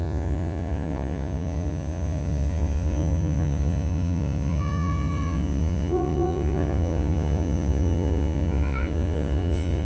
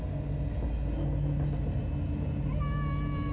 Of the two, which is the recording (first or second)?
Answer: second